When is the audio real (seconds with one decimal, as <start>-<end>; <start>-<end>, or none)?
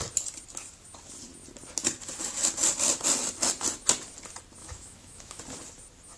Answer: 0.0-4.6; 5.4-6.2